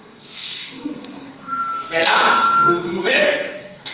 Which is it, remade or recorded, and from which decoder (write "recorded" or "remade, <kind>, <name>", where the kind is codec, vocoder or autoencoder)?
remade, codec, SNAC